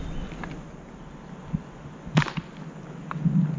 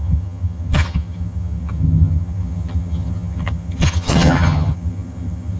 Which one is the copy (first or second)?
second